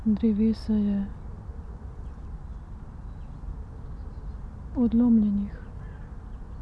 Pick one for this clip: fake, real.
real